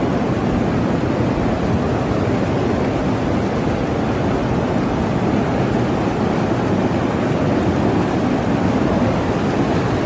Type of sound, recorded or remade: recorded